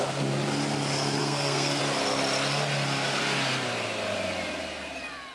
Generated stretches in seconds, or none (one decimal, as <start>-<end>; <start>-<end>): 1.2-1.8